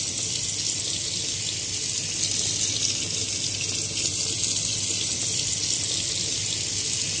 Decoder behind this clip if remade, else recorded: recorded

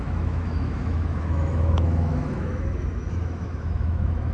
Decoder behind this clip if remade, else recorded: remade, autoencoder, DAC-VAE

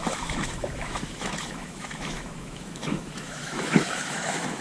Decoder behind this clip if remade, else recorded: remade, autoencoder, DAC-VAE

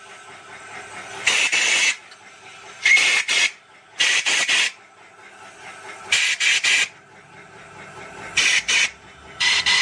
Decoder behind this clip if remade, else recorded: recorded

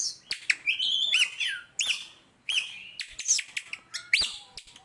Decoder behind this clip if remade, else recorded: recorded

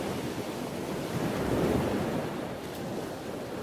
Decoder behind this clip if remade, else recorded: recorded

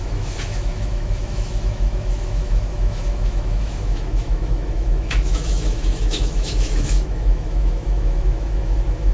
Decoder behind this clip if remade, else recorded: remade, autoencoder, DAC-VAE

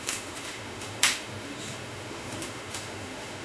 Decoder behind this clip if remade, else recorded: remade, autoencoder, DAC-VAE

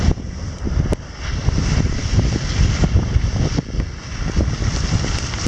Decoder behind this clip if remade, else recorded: recorded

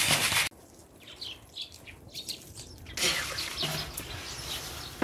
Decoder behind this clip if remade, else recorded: recorded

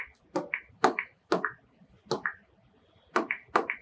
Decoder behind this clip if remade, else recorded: recorded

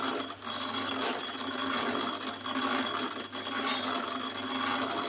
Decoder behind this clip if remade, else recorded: recorded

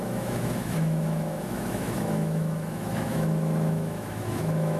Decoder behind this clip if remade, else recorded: remade, autoencoder, DAC-VAE